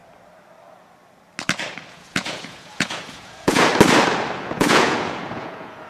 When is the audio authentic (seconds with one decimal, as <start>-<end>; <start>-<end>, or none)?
0.0-1.9; 3.7-4.4